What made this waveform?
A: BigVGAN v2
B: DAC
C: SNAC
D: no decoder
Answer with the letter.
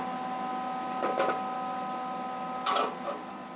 D